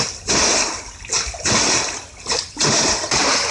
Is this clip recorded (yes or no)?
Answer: yes